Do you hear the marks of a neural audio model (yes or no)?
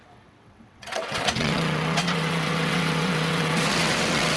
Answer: yes